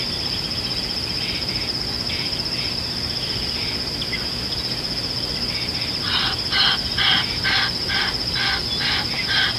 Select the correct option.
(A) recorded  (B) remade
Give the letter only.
A